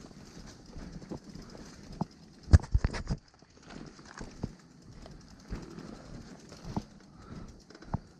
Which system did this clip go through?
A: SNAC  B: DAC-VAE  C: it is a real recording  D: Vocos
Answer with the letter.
C